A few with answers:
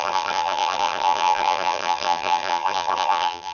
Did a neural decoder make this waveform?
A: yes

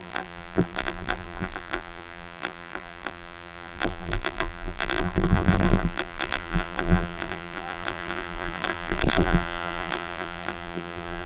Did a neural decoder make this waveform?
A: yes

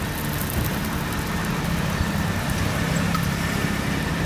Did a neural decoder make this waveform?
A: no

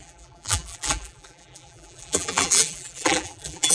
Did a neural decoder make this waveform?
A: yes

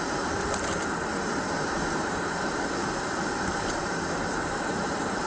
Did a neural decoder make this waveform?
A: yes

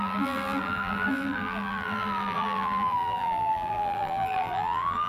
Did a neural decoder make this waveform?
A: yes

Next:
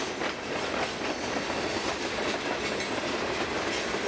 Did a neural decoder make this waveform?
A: no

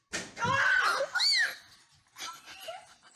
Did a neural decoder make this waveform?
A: no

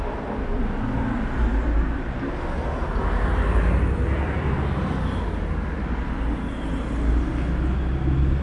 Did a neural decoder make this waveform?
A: no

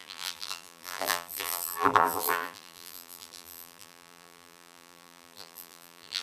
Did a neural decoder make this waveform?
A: yes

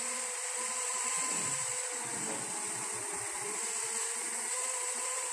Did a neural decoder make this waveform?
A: yes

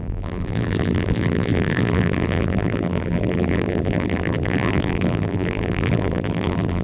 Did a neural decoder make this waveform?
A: yes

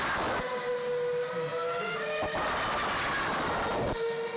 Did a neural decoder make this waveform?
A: no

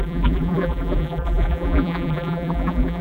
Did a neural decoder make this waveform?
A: yes